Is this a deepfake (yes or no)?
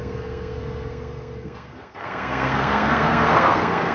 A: yes